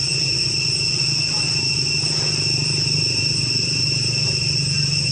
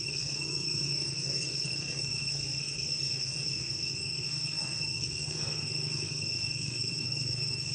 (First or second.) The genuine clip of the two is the first